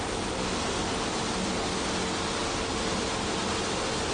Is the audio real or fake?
real